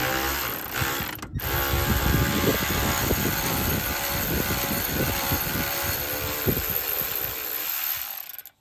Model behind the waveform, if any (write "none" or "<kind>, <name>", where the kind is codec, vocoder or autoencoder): none